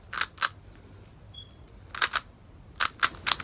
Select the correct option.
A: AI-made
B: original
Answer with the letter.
B